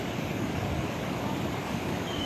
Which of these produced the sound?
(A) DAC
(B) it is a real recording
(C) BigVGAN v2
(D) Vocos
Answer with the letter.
A